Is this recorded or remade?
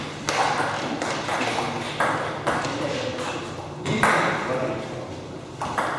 recorded